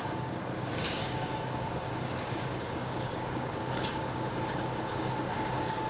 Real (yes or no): no